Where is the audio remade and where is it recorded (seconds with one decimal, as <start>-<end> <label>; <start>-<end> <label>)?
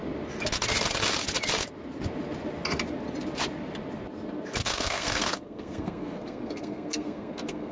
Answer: 0.0-4.6 recorded; 4.6-7.7 remade